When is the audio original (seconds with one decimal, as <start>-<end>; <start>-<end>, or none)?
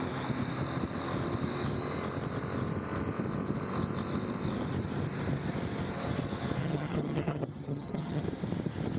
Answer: 0.0-6.6; 8.2-9.0